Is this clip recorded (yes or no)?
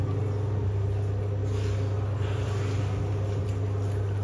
yes